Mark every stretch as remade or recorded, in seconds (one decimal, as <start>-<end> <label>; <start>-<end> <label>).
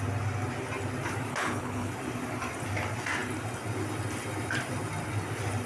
0.0-1.3 recorded; 1.3-1.9 remade; 1.9-5.7 recorded